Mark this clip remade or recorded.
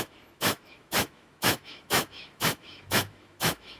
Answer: remade